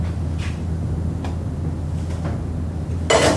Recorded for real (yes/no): yes